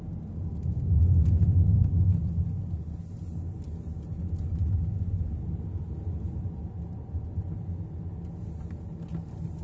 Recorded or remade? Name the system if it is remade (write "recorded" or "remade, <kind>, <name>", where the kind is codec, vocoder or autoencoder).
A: recorded